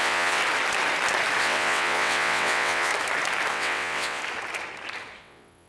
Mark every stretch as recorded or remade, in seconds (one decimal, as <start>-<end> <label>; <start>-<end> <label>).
0.0-0.4 remade; 0.4-1.4 recorded; 1.4-2.9 remade; 2.9-3.5 recorded; 3.5-4.2 remade; 4.2-5.2 recorded; 5.2-5.7 remade